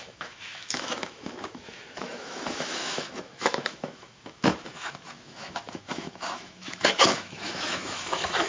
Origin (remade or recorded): remade